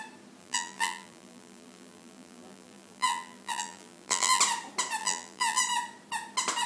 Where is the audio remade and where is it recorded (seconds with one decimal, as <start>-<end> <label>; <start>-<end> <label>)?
0.0-0.4 recorded; 0.4-4.4 remade; 4.4-5.0 recorded; 5.0-5.6 remade; 5.6-6.7 recorded